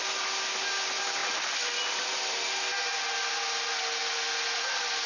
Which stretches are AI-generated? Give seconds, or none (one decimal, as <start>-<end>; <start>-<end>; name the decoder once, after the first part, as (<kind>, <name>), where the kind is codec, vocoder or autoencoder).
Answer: none